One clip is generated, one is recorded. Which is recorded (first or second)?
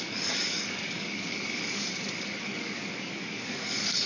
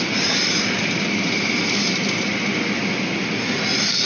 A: second